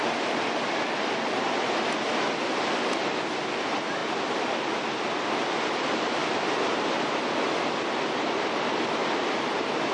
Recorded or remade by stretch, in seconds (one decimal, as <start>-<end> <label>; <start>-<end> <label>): 0.0-9.9 recorded